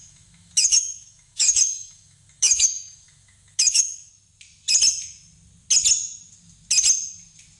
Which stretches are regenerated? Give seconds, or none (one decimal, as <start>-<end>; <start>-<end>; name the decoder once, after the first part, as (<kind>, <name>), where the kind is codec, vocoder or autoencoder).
0.0-4.1 (autoencoder, DAC-VAE)